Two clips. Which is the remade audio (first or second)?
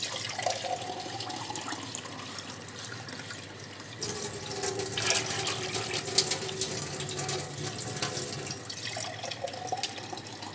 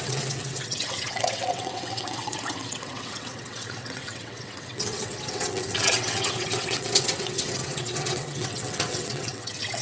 second